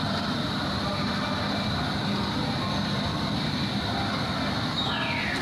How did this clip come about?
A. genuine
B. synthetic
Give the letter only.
A